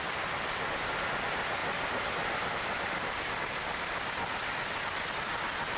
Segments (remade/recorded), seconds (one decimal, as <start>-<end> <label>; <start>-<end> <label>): 0.0-5.8 recorded